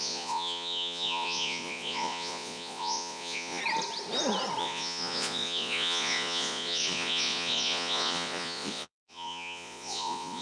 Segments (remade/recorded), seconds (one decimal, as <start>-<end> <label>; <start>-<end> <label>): 0.0-3.6 remade; 3.6-4.6 recorded; 4.6-10.4 remade